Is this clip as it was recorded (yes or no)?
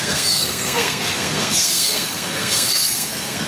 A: no